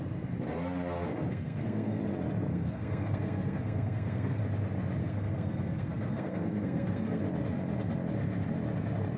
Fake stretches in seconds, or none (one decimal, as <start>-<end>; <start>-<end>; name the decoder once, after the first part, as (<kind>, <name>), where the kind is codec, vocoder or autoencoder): 1.3-2.0 (codec, SNAC); 2.5-4.4; 5.0-7.2